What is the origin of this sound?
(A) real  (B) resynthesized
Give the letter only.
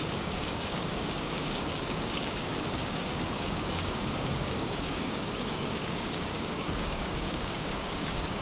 B